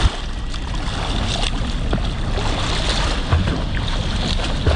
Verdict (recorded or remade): recorded